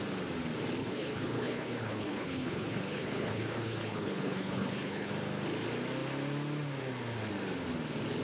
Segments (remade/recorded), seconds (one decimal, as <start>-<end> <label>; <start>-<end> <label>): 0.0-0.8 recorded; 0.8-5.1 remade; 5.1-8.2 recorded